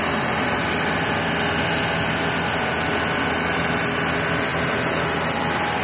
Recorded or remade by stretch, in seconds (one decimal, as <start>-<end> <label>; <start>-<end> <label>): 0.0-5.8 recorded